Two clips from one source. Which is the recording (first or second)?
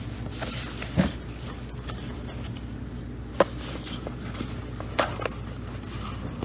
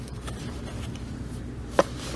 first